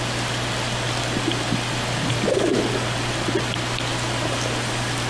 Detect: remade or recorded recorded